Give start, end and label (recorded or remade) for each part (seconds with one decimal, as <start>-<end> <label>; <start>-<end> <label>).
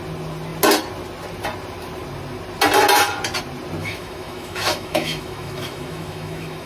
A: 0.0-3.8 recorded; 3.8-6.7 remade